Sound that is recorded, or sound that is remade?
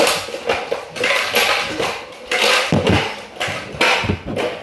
recorded